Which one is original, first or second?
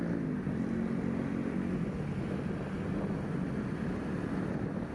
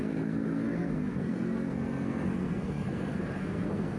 first